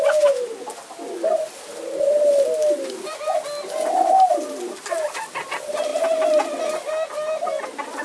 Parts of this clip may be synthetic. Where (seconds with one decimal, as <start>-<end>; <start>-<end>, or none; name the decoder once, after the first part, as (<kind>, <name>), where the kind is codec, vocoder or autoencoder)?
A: none